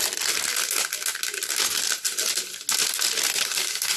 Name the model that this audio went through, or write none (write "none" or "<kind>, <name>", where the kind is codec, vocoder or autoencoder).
none